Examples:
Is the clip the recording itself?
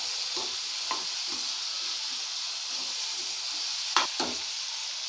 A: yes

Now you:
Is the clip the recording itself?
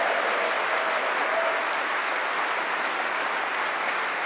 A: no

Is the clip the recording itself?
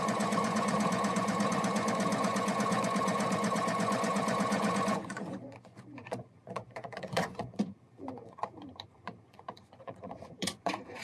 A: no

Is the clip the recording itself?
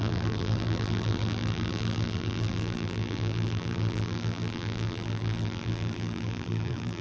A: no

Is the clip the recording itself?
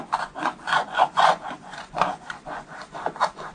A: no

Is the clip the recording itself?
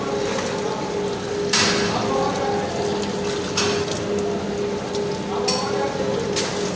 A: yes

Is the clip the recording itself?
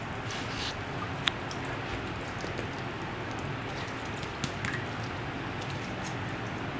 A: yes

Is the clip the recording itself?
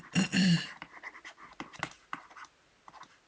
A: yes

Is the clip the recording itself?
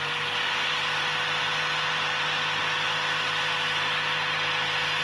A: yes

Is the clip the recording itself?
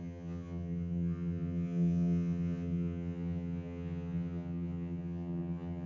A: no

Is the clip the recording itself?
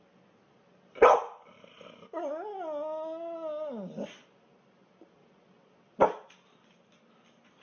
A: yes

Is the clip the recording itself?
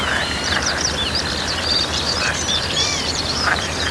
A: no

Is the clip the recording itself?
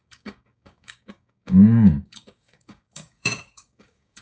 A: no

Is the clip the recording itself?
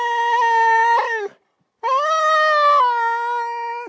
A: yes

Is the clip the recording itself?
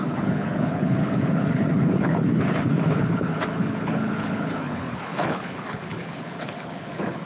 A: no